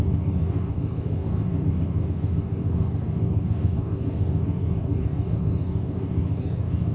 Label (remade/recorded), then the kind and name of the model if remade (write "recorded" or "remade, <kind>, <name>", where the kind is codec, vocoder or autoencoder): remade, codec, DAC